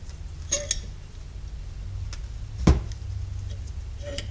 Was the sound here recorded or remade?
recorded